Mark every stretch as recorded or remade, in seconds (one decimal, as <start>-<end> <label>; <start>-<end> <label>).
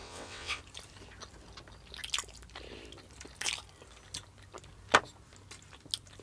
0.0-0.6 remade; 0.6-6.2 recorded